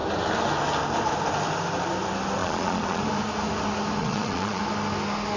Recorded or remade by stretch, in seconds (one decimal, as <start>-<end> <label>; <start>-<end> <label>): 0.0-2.4 recorded; 2.4-3.0 remade; 3.0-4.0 recorded; 4.0-4.6 remade; 4.6-5.4 recorded